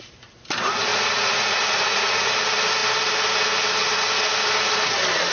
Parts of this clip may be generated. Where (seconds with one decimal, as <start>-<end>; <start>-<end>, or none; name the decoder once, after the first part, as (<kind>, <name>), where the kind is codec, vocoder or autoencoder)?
0.9-2.3 (vocoder, Vocos)